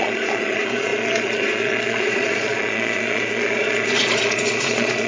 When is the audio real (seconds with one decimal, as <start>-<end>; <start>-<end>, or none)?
none